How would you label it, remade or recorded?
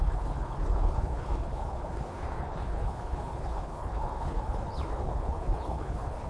remade